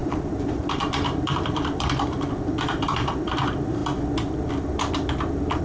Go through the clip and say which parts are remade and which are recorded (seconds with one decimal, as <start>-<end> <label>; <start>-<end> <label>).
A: 0.0-3.4 remade; 3.4-5.6 recorded